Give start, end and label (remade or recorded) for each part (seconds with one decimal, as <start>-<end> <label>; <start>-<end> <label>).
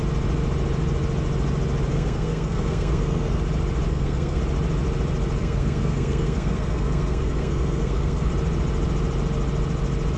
0.0-1.9 recorded; 1.9-3.4 remade; 3.4-3.9 recorded; 3.9-4.4 remade; 4.4-5.4 recorded; 5.4-8.3 remade; 8.3-10.2 recorded